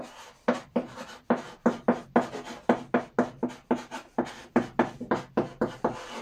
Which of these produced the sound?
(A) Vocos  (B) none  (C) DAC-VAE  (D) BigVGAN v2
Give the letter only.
B